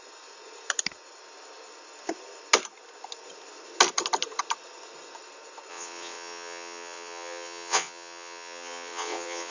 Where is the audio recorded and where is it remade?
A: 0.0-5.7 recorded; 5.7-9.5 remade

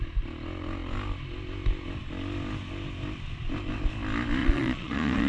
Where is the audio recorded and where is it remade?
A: 0.0-4.4 recorded; 4.4-5.3 remade

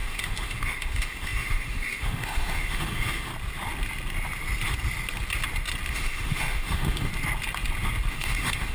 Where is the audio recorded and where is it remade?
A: 0.0-3.3 remade; 3.3-5.9 recorded; 5.9-7.1 remade; 7.1-8.1 recorded; 8.1-8.7 remade

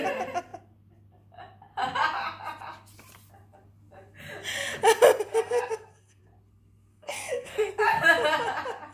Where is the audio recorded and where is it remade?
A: 0.0-5.3 recorded; 5.3-6.2 remade; 6.2-6.9 recorded; 6.9-7.7 remade; 7.7-8.9 recorded

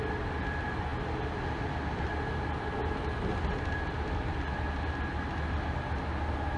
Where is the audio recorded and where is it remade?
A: 0.0-6.6 recorded

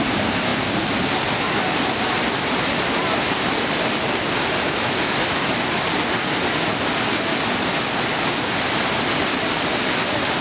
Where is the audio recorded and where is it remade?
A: 0.0-10.4 recorded